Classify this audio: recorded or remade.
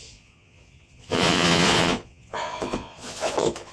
remade